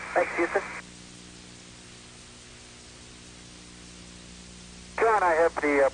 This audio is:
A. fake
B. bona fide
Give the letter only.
B